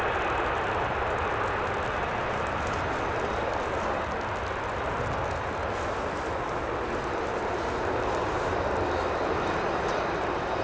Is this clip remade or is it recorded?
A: recorded